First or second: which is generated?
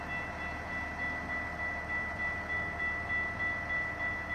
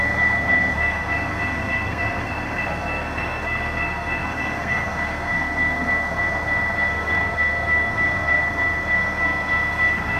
second